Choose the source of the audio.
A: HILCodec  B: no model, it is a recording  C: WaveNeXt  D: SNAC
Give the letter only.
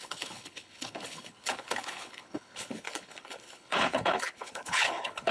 A